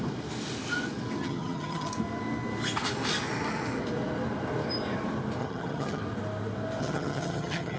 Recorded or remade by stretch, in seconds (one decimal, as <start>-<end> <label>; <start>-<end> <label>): 0.0-1.2 recorded; 1.2-1.9 remade; 1.9-5.4 recorded; 5.4-6.0 remade; 6.0-6.8 recorded; 6.8-7.8 remade